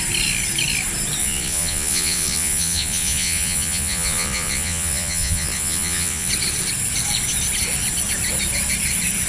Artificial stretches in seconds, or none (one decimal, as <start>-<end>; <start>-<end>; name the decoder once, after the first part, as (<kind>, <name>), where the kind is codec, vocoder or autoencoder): 1.2-6.3 (vocoder, Vocos)